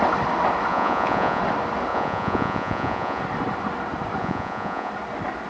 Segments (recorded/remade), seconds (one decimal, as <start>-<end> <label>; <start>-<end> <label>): 0.0-0.7 recorded; 0.7-1.4 remade; 1.4-1.9 recorded; 1.9-3.2 remade; 3.2-4.2 recorded; 4.2-4.9 remade; 4.9-5.5 recorded